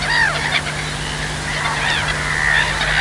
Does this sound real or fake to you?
real